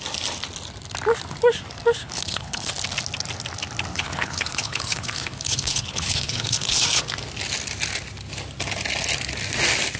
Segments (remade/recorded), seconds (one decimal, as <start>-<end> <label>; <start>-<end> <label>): 0.0-2.0 recorded; 2.0-2.7 remade; 2.7-3.9 recorded; 3.9-7.0 remade; 7.0-10.0 recorded